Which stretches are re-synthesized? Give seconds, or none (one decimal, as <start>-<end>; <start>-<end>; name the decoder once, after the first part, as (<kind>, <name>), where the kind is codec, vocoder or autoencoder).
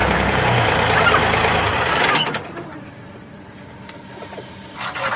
0.0-3.1 (vocoder, BigVGAN v2)